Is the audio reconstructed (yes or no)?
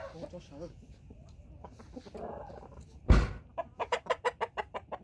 no